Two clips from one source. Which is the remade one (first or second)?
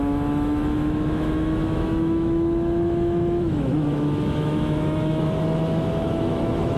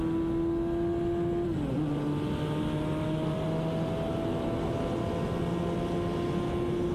first